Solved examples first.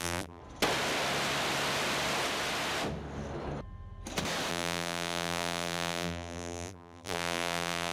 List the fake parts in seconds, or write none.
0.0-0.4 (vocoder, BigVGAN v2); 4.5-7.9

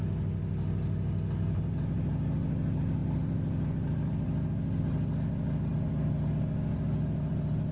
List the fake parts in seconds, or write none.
3.0-4.8 (vocoder, BigVGAN v2)

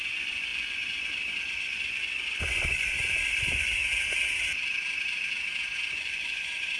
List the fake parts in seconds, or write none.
0.0-3.8 (vocoder, Vocos); 5.9-6.8

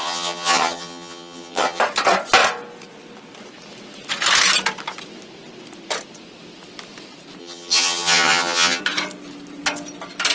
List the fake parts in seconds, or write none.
0.0-1.8 (vocoder, HiFi-GAN); 7.4-8.8

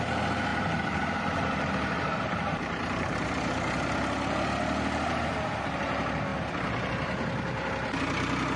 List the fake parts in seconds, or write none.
0.5-3.3 (vocoder, BigVGAN v2)

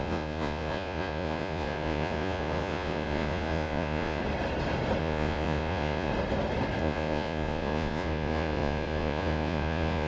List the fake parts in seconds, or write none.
0.0-4.2 (vocoder, Vocos); 5.0-6.1; 6.8-10.1